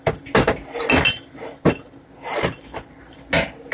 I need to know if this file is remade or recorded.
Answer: recorded